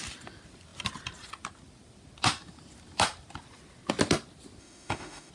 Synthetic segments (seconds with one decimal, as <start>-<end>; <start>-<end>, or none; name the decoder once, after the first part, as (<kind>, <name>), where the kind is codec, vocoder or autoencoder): 4.6-5.3 (autoencoder, DAC-VAE)